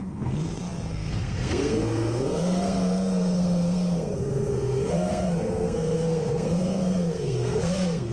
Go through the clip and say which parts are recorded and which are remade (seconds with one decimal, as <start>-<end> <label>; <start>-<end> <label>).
0.0-8.1 remade